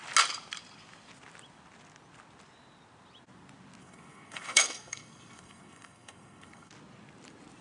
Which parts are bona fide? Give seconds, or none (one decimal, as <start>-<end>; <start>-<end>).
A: 0.0-3.8; 6.7-7.6

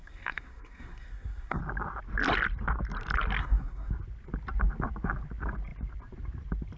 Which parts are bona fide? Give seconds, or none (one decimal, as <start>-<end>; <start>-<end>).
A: 1.6-3.4; 3.9-6.8

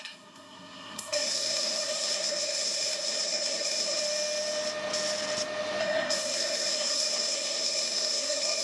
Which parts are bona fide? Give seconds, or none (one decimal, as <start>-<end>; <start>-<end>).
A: 4.0-5.8

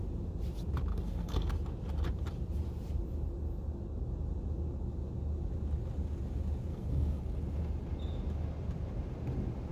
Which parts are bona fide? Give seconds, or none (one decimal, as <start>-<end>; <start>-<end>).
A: 0.0-0.9; 1.5-6.7; 7.2-9.7

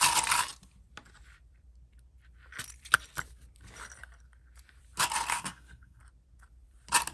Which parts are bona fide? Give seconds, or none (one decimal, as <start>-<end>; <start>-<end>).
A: 0.0-5.3; 6.0-7.1

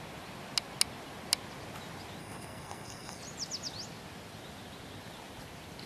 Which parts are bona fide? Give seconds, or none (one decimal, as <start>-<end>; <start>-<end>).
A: 0.0-2.2; 3.2-5.9

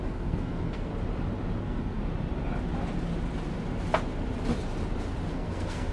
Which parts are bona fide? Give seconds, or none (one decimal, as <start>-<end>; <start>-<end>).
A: 0.9-1.6; 2.0-5.3

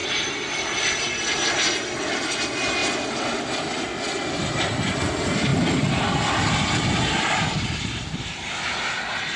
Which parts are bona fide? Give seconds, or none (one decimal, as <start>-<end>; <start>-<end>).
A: 0.0-9.4